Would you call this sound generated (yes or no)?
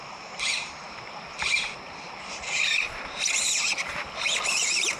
no